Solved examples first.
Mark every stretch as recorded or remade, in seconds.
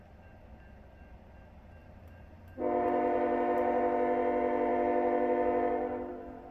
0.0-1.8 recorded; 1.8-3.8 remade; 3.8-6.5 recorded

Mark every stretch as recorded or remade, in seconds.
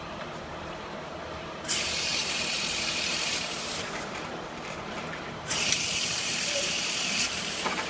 0.0-7.9 remade